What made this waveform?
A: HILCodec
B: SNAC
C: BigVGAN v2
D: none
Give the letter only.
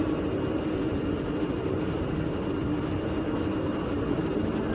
D